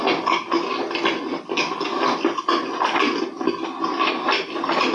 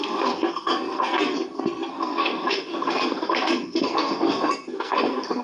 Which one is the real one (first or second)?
first